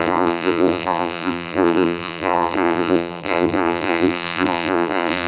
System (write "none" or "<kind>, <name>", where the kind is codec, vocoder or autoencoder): vocoder, BigVGAN v2